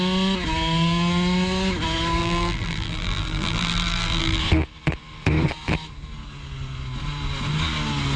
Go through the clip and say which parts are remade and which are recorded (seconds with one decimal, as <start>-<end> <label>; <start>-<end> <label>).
0.0-2.2 recorded; 2.2-4.4 remade; 4.4-8.2 recorded